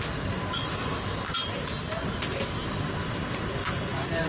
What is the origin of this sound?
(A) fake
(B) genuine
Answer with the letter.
B